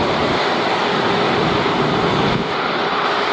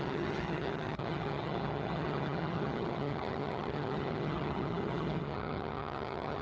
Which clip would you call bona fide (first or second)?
first